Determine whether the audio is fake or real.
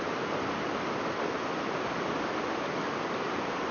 real